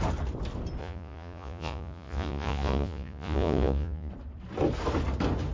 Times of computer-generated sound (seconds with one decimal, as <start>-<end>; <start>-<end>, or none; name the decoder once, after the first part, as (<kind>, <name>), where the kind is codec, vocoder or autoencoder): 0.8-4.1 (vocoder, Vocos)

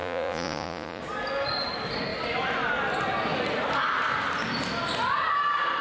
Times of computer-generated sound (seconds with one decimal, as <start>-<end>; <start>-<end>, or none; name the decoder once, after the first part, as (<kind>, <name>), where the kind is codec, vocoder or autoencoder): 0.0-1.0 (vocoder, Vocos)

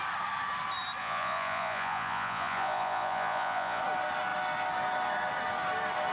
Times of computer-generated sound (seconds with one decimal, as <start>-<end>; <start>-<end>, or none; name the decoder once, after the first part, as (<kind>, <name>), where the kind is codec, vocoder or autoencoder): 1.0-3.8 (vocoder, Vocos)

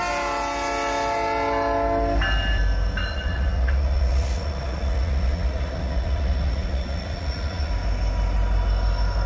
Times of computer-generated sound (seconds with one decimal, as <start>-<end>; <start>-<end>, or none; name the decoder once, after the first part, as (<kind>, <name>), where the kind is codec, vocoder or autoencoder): 3.0-7.7 (vocoder, Vocos)

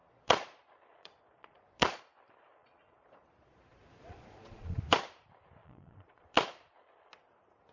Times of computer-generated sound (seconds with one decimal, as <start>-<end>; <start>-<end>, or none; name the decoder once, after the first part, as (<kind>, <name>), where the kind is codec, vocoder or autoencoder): 0.0-2.0 (vocoder, Vocos); 2.5-4.8; 5.6-7.1

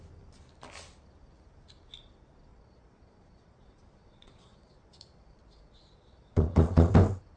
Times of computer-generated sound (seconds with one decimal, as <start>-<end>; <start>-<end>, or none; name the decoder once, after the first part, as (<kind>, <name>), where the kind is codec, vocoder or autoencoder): 2.5-6.9 (vocoder, Vocos)

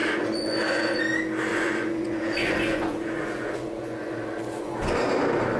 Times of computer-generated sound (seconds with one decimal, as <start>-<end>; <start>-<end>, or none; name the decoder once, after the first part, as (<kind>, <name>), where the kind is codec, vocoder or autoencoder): 0.0-1.0 (vocoder, Vocos); 1.5-4.9